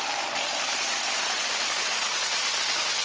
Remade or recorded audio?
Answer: remade